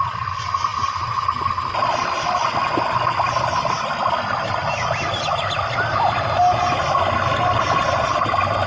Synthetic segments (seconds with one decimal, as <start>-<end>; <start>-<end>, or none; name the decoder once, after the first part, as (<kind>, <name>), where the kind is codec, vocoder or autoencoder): none

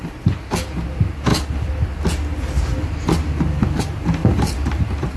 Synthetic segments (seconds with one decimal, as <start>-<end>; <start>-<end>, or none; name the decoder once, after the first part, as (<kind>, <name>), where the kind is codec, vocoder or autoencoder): 0.0-1.3 (vocoder, BigVGAN v2); 3.8-5.2

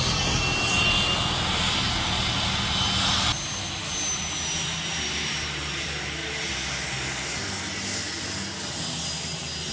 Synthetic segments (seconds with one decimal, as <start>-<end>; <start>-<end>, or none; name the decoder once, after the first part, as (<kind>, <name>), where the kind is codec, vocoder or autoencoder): none